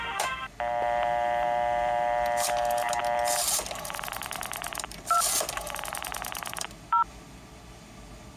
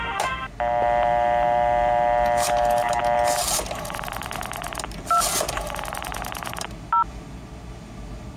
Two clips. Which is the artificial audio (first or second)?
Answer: first